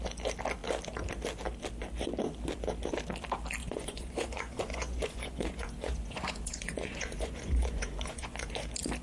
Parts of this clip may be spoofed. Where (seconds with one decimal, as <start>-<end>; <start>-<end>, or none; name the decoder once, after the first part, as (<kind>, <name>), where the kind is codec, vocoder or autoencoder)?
3.6-8.5 (vocoder, Vocos)